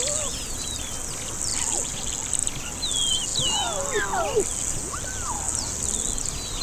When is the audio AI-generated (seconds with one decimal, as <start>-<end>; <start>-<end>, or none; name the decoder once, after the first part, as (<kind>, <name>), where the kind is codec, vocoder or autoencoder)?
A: none